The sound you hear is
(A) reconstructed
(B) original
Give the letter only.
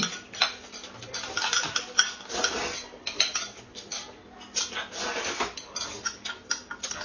B